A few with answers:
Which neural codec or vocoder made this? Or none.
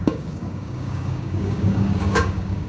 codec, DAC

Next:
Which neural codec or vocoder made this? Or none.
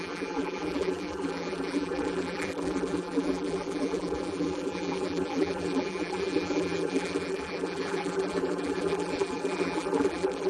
vocoder, BigVGAN v2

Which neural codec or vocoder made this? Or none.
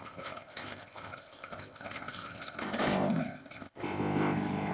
codec, ZipCodec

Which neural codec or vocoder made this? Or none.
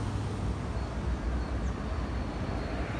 none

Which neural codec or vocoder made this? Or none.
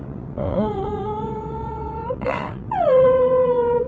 vocoder, WaveNeXt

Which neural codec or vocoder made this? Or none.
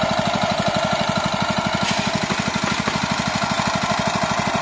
none